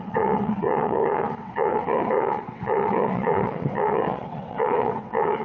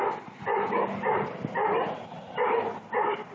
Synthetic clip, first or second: first